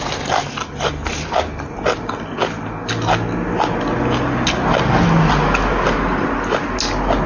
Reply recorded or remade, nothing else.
recorded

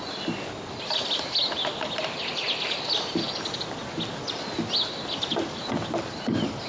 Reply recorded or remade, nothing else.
recorded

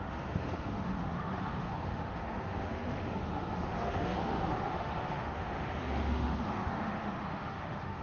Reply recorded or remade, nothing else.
remade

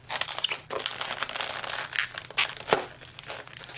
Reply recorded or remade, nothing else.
recorded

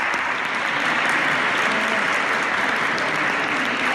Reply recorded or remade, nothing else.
recorded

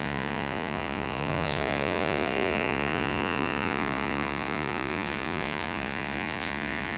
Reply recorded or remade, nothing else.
remade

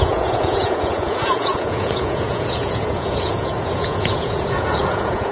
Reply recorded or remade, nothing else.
remade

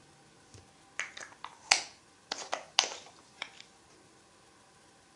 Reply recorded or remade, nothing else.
recorded